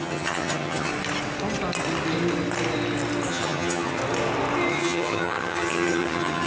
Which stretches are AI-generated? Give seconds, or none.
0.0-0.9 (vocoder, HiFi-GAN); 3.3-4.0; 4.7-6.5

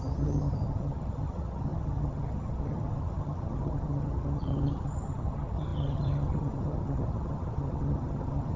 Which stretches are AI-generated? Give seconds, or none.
0.0-8.6 (vocoder, HiFi-GAN)

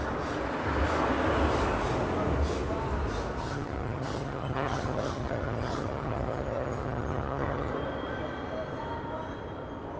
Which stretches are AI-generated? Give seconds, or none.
3.4-7.7 (vocoder, HiFi-GAN)